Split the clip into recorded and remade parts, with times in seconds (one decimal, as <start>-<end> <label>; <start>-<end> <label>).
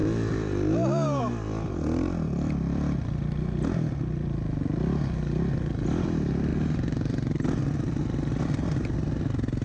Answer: 0.0-1.2 recorded; 1.2-9.6 remade